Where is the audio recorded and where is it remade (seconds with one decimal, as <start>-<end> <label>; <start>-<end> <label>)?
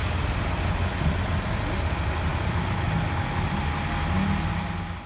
0.0-5.1 recorded